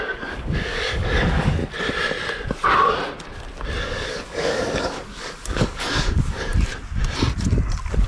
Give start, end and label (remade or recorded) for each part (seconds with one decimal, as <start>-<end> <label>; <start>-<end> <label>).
0.0-1.6 remade; 1.6-3.8 recorded; 3.8-6.5 remade; 6.5-8.1 recorded

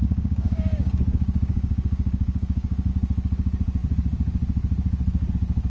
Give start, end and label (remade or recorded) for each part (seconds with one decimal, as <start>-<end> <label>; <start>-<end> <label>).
0.0-2.9 remade; 2.9-5.7 recorded

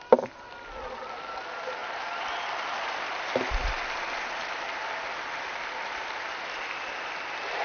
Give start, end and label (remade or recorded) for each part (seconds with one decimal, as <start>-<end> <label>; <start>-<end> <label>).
0.0-7.6 recorded

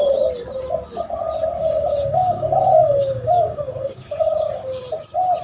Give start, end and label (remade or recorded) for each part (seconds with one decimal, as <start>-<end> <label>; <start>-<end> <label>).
0.0-1.6 recorded; 1.6-4.8 remade; 4.8-5.4 recorded

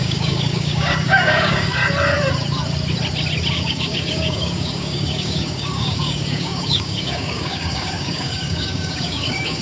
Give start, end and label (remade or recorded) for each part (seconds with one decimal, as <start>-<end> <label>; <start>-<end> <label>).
0.0-1.8 remade; 1.8-3.5 recorded; 3.5-9.6 remade

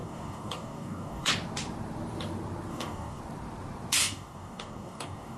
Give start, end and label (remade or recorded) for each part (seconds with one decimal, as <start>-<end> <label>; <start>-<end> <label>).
0.0-1.3 remade; 1.3-2.7 recorded; 2.7-3.2 remade; 3.2-4.0 recorded; 4.0-5.4 remade

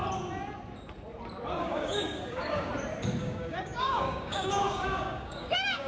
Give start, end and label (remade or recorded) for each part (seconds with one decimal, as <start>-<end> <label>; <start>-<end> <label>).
0.0-1.6 recorded; 1.6-2.7 remade; 2.7-3.2 recorded; 3.2-5.9 remade